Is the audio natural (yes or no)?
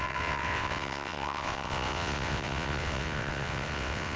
no